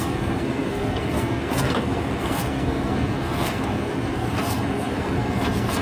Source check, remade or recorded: remade